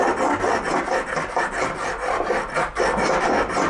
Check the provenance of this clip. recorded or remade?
recorded